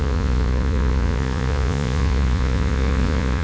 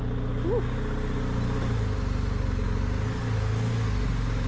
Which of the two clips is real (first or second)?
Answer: second